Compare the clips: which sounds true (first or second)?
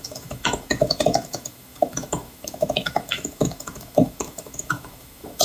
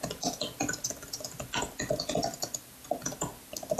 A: second